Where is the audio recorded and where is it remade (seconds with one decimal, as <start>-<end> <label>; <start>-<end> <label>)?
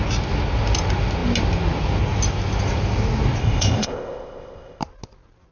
0.0-3.4 recorded; 3.4-4.8 remade; 4.8-5.5 recorded